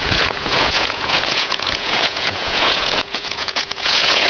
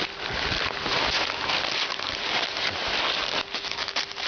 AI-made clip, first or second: first